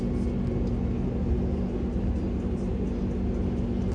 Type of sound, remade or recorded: recorded